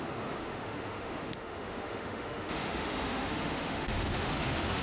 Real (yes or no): no